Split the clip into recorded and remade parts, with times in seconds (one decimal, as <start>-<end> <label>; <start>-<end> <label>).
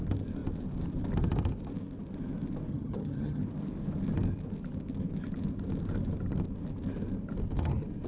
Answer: 0.0-2.7 recorded; 2.7-3.4 remade; 3.4-8.1 recorded